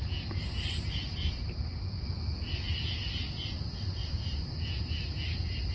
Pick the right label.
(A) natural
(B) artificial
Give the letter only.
A